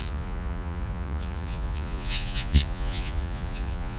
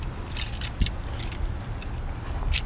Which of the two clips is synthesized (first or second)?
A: first